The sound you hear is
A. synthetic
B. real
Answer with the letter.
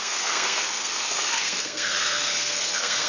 A